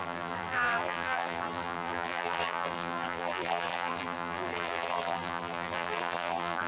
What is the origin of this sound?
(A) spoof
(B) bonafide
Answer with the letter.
A